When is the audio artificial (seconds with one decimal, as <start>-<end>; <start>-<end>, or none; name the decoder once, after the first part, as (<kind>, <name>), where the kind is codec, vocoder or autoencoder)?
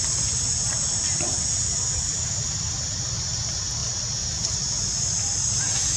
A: none